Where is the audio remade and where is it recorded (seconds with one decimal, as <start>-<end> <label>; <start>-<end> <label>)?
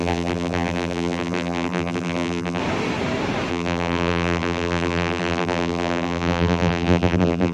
0.0-2.6 remade; 2.6-3.5 recorded; 3.5-7.5 remade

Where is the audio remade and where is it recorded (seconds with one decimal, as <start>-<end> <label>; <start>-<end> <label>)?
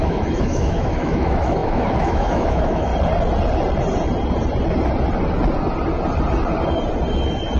0.0-2.9 remade; 2.9-7.6 recorded